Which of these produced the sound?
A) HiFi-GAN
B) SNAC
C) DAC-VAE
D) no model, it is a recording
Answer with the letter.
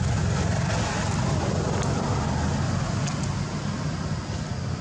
D